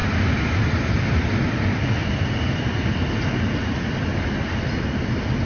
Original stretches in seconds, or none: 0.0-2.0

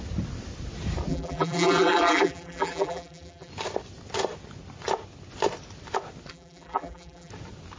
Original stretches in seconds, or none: 0.0-1.1; 3.5-6.3; 7.3-7.8